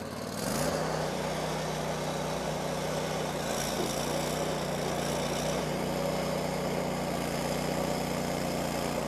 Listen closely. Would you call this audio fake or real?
real